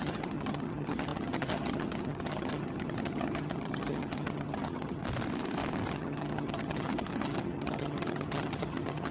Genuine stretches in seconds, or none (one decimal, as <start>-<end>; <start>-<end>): 5.0-5.9

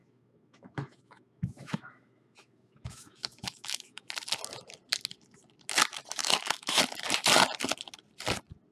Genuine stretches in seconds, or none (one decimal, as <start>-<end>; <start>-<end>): 4.1-6.2; 6.8-8.7

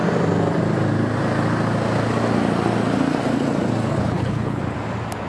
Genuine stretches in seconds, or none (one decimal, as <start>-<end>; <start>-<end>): 0.0-3.9; 4.6-5.3

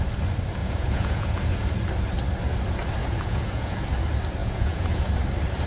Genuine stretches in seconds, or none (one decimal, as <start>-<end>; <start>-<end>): 0.0-0.6; 1.7-3.0; 3.8-4.4; 5.1-5.7